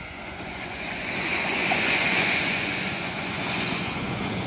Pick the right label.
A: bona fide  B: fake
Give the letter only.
B